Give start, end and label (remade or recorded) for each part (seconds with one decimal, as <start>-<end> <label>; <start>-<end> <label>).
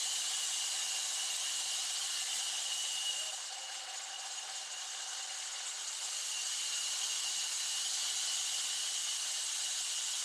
0.0-4.9 recorded; 4.9-6.7 remade; 6.7-10.2 recorded